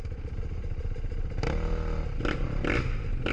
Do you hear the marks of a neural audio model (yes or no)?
no